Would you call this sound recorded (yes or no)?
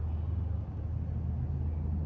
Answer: yes